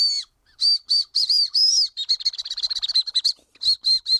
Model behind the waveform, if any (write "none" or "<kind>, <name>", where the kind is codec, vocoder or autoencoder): vocoder, BigVGAN v2